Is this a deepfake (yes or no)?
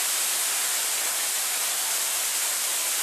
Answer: no